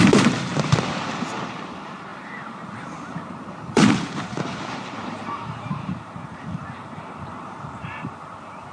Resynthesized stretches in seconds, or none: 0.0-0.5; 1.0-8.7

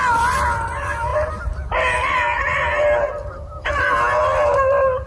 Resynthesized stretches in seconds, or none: none